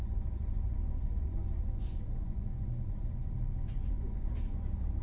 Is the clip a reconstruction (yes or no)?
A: yes